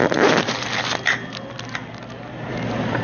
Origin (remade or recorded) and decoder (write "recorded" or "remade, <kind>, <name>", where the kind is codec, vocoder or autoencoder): remade, vocoder, BigVGAN v2